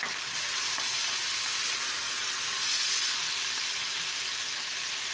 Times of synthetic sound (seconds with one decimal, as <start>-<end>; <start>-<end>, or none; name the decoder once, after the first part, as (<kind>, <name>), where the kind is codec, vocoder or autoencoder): none